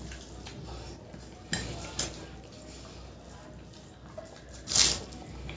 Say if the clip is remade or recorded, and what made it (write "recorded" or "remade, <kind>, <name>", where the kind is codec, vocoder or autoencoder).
recorded